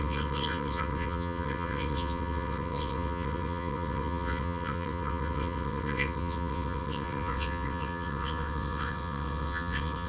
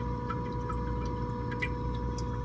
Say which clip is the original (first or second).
second